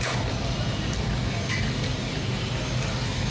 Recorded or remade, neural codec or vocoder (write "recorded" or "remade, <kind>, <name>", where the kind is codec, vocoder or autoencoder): recorded